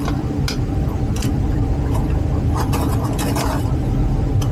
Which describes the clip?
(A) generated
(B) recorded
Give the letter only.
B